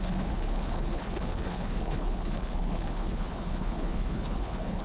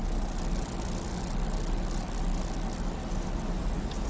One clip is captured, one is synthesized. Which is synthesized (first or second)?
first